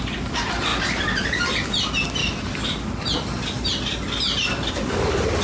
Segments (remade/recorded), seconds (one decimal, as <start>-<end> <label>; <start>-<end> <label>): 0.0-5.4 recorded